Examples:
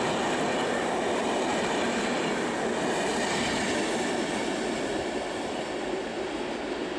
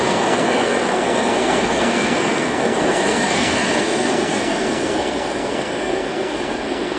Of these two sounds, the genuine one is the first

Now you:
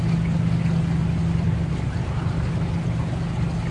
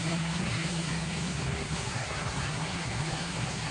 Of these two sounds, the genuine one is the first